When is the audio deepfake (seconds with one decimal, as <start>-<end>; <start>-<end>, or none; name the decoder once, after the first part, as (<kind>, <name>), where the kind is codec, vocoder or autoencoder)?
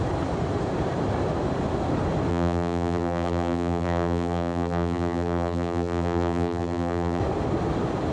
2.3-7.2 (vocoder, BigVGAN v2)